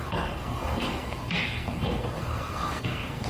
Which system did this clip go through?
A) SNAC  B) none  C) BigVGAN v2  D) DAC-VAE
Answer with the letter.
A